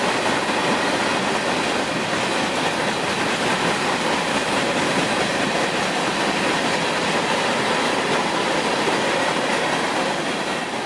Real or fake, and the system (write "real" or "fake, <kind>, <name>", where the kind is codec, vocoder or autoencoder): real